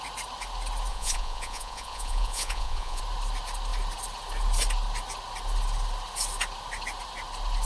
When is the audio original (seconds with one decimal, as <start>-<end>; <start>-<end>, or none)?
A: 0.0-0.9; 3.0-7.6